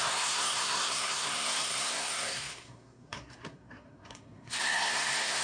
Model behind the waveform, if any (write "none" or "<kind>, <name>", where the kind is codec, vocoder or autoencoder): codec, SNAC